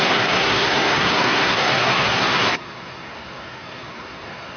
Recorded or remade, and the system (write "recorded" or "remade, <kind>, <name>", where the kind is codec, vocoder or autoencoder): remade, codec, SNAC